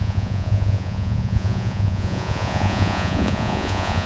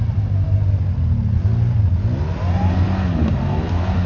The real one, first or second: second